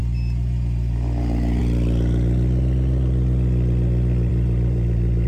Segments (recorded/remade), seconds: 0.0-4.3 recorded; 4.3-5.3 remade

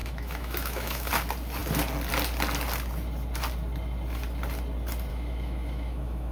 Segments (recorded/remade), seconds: 0.0-1.1 remade; 1.1-5.1 recorded; 5.1-6.3 remade

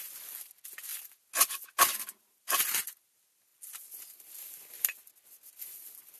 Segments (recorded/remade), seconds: 0.0-6.2 recorded

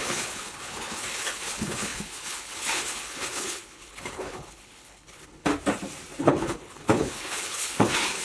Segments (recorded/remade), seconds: 0.0-5.5 remade; 5.5-6.2 recorded; 6.2-8.2 remade

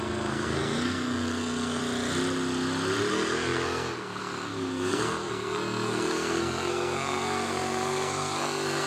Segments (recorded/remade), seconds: 0.0-1.8 remade; 1.8-3.1 recorded; 3.1-8.9 remade

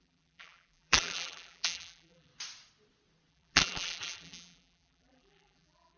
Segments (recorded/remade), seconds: 0.0-2.3 remade; 2.3-3.3 recorded; 3.3-6.0 remade

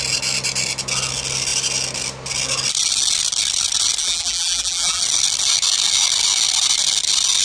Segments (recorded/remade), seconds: 0.0-4.0 recorded; 4.0-5.0 remade; 5.0-7.4 recorded

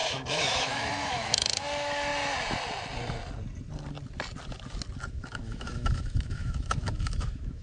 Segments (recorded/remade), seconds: 0.0-2.1 remade; 2.1-5.1 recorded; 5.1-7.6 remade